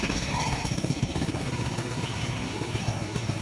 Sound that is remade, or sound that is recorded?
remade